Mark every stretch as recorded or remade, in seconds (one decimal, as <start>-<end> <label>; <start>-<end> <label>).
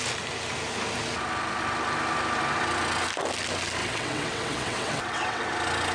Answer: 0.0-3.8 recorded; 3.8-5.5 remade; 5.5-5.9 recorded